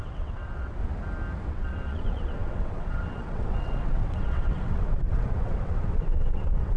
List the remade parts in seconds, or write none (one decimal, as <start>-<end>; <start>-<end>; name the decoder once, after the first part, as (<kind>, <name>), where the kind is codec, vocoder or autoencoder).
0.0-0.8 (vocoder, WaveNeXt); 1.5-6.8